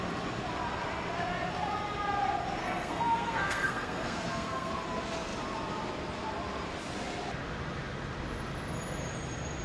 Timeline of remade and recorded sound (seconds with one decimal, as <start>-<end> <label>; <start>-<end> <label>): 0.0-2.6 recorded; 2.6-4.7 remade; 4.7-9.6 recorded